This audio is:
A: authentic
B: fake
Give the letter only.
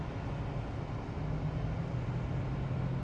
A